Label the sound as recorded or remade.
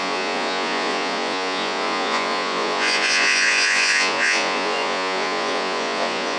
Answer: remade